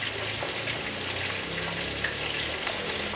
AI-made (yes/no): no